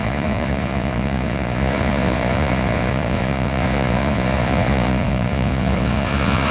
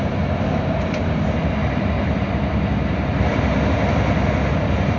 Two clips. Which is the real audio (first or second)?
second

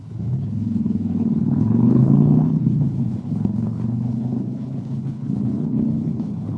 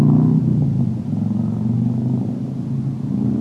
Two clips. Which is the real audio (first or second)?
second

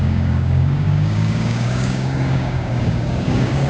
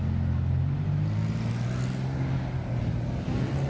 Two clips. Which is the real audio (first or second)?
second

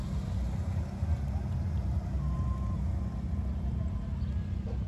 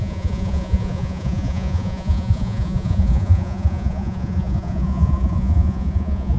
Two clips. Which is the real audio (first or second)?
first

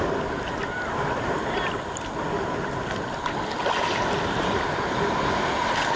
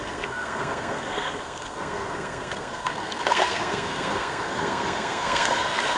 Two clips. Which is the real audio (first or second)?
first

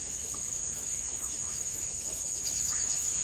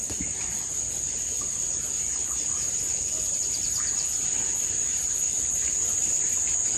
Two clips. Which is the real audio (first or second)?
second